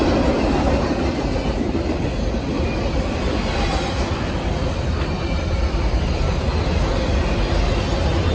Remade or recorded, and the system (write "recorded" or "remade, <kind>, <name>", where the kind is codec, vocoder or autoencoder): recorded